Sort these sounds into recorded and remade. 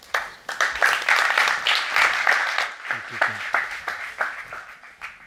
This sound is recorded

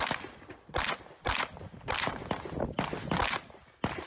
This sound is recorded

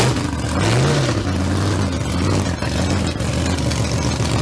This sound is recorded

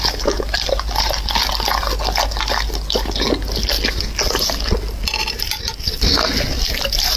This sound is recorded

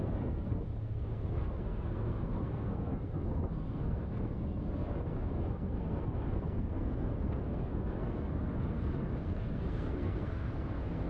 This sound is remade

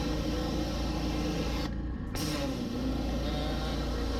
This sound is recorded